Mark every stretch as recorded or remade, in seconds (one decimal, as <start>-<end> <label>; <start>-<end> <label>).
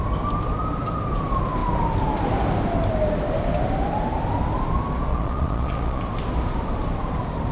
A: 0.0-5.1 recorded; 5.1-6.0 remade; 6.0-7.5 recorded